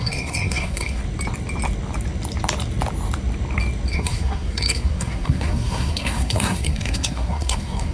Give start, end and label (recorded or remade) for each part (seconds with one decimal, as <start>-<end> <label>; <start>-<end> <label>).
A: 0.0-1.0 remade; 1.0-3.9 recorded; 3.9-7.9 remade

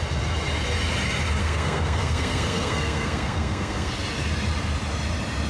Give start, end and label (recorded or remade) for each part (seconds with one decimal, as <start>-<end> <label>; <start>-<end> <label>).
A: 0.0-1.4 recorded; 1.4-3.9 remade; 3.9-5.5 recorded